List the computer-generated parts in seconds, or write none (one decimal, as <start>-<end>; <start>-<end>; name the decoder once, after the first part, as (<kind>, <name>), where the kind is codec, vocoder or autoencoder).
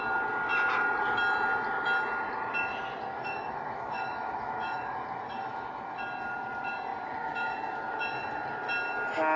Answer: 3.1-6.0 (autoencoder, DAC-VAE)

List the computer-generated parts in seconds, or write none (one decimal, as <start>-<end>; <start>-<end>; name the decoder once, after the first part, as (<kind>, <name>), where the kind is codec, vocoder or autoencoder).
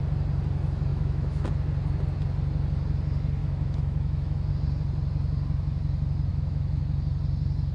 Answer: 0.9-1.5 (autoencoder, DAC-VAE); 3.4-4.5; 6.3-6.8